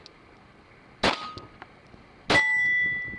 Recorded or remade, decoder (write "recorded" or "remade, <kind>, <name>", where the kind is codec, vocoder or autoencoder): recorded